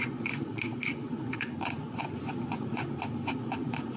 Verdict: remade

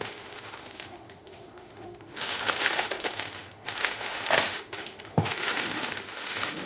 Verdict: remade